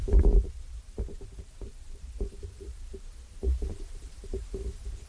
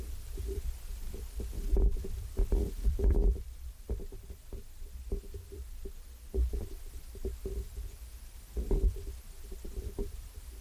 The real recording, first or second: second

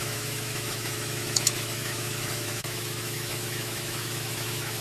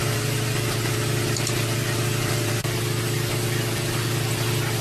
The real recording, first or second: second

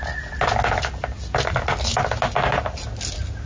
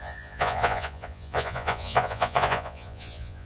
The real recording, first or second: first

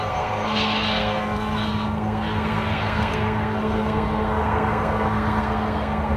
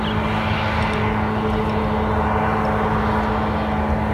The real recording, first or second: second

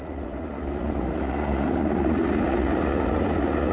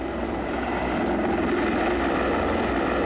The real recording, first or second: second